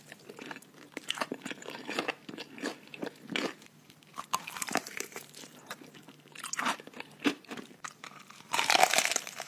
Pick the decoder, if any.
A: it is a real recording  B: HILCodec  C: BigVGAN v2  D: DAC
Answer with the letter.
C